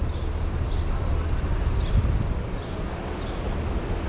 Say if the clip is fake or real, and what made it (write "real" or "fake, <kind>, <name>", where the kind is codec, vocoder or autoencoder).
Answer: real